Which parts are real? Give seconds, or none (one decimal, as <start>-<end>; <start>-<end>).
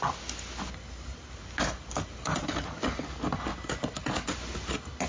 0.0-5.1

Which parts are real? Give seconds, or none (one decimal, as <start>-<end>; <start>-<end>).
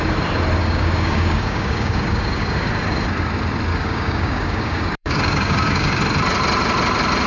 0.0-0.6; 2.7-3.7; 6.0-7.3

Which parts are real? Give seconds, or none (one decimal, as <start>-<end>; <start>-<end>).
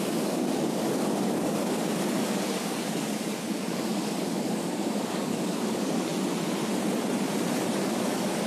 6.1-7.9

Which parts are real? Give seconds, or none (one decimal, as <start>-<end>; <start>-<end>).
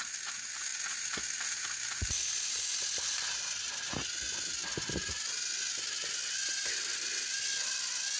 0.0-8.2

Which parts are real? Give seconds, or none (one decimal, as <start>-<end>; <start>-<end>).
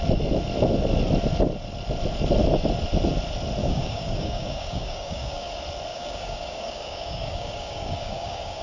0.0-3.6; 5.5-5.9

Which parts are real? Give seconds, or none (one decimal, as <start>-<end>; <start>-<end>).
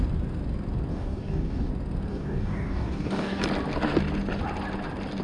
0.0-0.9; 1.7-2.1; 3.4-5.2